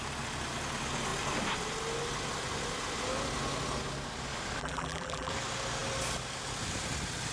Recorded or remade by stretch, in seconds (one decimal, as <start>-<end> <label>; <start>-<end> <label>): 0.0-4.6 recorded; 4.6-5.3 remade; 5.3-7.3 recorded

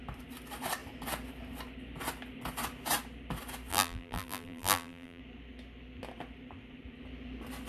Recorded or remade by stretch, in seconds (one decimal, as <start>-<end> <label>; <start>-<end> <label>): 0.0-3.7 recorded; 3.7-5.2 remade; 5.2-7.7 recorded

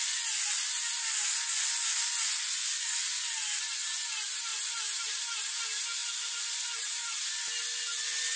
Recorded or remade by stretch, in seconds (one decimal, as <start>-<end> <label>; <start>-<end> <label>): 0.0-6.0 recorded; 6.0-7.3 remade; 7.3-8.4 recorded